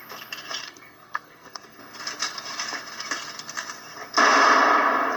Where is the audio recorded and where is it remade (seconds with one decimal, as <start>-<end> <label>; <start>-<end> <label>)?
0.0-0.6 recorded; 0.6-1.8 remade; 1.8-5.2 recorded